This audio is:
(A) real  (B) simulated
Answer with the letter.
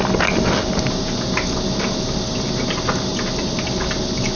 A